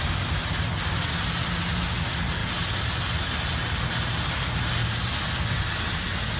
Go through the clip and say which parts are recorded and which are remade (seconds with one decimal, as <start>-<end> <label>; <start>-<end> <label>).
0.0-6.4 recorded